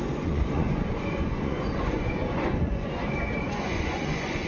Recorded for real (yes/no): no